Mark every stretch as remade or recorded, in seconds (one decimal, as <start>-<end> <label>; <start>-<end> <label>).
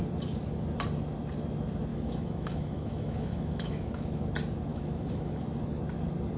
0.0-1.9 recorded; 1.9-4.2 remade; 4.2-4.7 recorded; 4.7-5.4 remade; 5.4-6.4 recorded